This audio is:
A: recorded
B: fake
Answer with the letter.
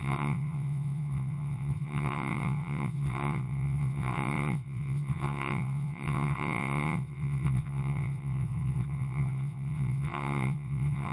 B